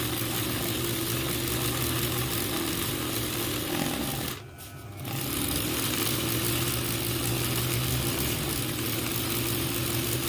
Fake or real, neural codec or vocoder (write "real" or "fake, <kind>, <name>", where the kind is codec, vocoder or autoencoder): real